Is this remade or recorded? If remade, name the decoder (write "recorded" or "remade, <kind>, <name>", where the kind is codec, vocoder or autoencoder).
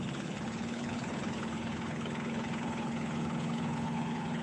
remade, codec, HILCodec